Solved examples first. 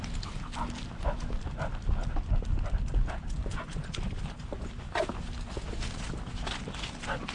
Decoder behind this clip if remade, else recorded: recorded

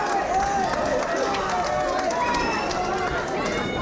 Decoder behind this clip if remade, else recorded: recorded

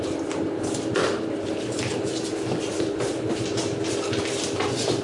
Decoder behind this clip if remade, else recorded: recorded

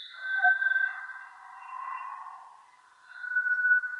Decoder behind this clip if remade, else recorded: recorded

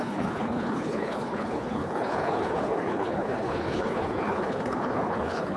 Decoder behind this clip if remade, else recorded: remade, codec, HILCodec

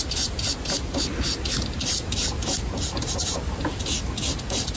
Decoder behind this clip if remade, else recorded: recorded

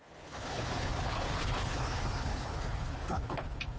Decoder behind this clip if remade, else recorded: remade, codec, HILCodec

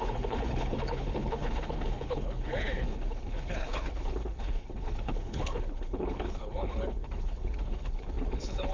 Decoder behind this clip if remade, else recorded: remade, codec, HILCodec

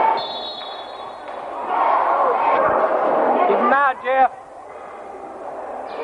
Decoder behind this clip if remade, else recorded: recorded